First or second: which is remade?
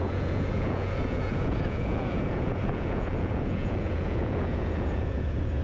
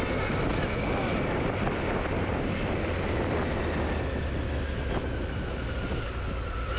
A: first